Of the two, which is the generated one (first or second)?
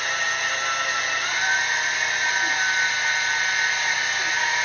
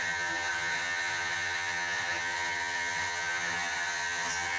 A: second